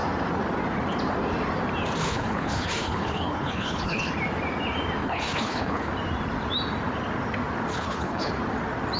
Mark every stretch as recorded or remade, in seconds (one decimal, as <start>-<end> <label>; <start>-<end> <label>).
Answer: 0.0-2.0 recorded; 2.0-4.1 remade; 4.1-5.0 recorded; 5.0-5.9 remade; 5.9-7.7 recorded; 7.7-8.3 remade; 8.3-9.0 recorded